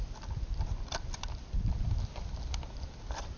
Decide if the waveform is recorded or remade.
recorded